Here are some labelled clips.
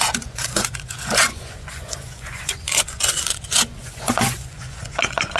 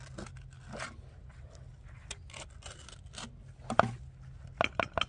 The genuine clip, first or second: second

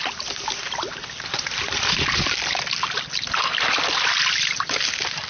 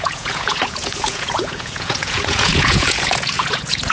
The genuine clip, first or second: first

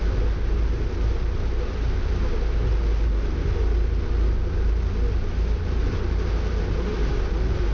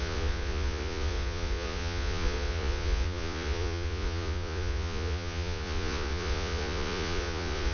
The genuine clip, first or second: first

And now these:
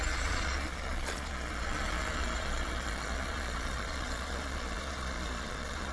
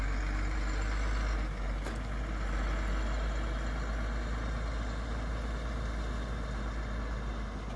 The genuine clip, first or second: second